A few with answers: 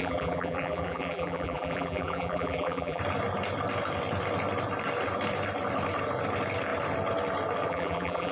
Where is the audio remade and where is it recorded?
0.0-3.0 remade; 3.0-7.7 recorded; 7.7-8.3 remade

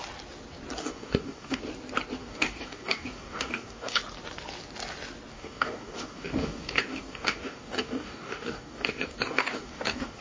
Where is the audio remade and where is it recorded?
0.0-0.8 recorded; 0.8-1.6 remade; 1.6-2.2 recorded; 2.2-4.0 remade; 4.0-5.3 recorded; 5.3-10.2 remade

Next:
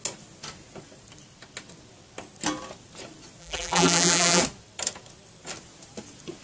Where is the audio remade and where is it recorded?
0.0-3.4 recorded; 3.4-4.4 remade; 4.4-6.4 recorded

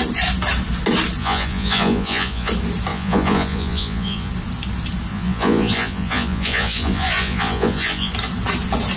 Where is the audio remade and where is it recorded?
0.0-1.2 recorded; 1.2-2.5 remade; 2.5-2.9 recorded; 2.9-4.3 remade; 4.3-5.1 recorded; 5.1-8.1 remade; 8.1-9.0 recorded

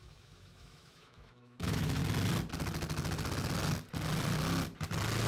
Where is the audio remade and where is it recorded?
0.0-2.0 remade; 2.0-5.3 recorded

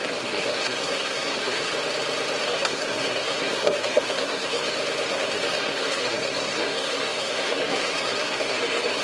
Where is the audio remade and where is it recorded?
0.0-1.7 remade; 1.7-2.4 recorded; 2.4-4.6 remade; 4.6-5.1 recorded; 5.1-9.0 remade